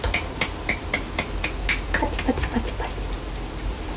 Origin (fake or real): real